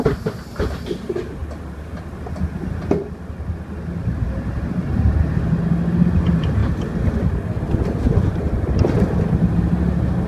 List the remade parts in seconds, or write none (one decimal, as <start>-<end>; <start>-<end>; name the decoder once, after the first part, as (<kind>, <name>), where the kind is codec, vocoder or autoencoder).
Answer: none